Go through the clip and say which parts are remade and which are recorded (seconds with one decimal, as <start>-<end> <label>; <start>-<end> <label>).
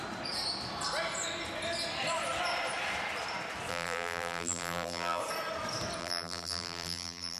0.0-3.7 recorded; 3.7-5.2 remade; 5.2-6.0 recorded; 6.0-7.4 remade